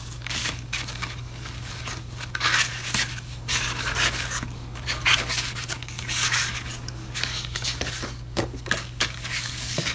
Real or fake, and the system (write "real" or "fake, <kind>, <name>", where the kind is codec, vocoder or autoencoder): fake, codec, DAC